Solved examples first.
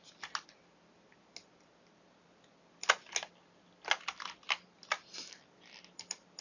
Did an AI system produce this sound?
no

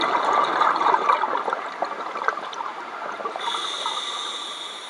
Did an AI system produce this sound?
yes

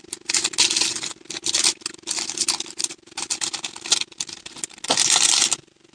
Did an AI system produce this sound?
no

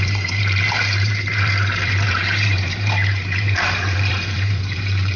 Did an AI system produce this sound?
yes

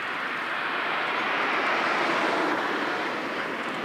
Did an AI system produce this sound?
no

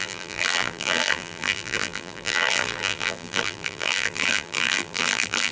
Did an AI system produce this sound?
yes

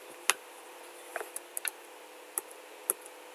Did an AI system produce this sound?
no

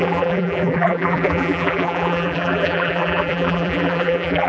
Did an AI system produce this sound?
yes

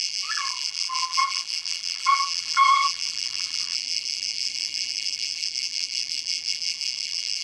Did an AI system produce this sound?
yes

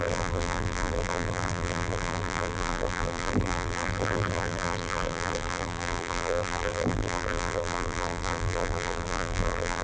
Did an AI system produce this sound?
yes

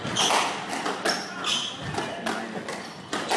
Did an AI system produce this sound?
no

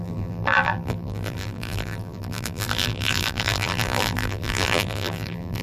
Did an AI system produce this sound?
yes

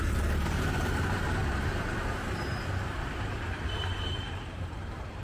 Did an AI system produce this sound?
yes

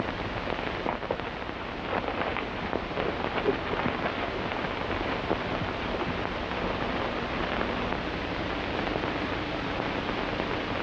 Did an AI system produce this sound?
no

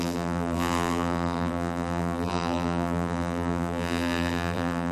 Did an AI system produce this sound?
yes